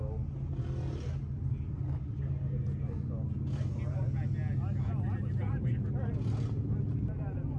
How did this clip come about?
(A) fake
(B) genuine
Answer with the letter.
B